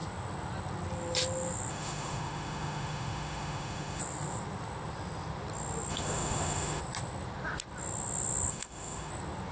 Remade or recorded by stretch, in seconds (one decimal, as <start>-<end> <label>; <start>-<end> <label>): 0.0-1.7 recorded; 1.7-4.0 remade; 4.0-5.9 recorded; 5.9-6.8 remade; 6.8-8.5 recorded; 8.5-9.1 remade; 9.1-9.5 recorded